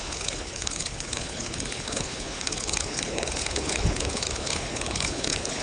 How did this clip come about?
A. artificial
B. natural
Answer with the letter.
A